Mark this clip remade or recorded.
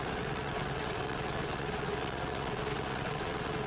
remade